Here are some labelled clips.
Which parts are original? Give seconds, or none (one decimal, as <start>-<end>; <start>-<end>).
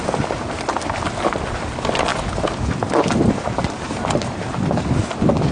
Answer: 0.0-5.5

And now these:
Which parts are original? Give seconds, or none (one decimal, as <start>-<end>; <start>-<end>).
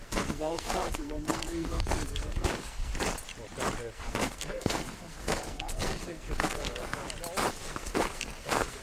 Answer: 2.9-3.9; 7.0-7.5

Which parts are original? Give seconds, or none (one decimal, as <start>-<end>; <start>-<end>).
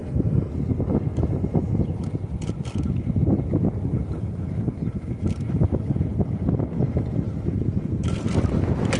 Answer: 0.5-9.0